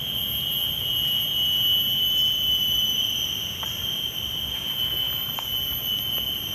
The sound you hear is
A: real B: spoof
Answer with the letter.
A